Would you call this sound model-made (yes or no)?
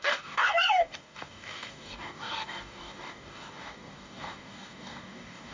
yes